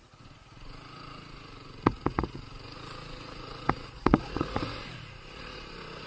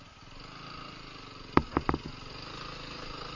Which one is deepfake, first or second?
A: first